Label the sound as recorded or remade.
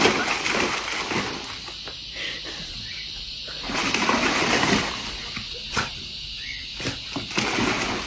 recorded